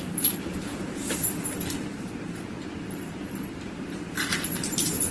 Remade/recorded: remade